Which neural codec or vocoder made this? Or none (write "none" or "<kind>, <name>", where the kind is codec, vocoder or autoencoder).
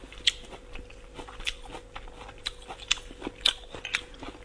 none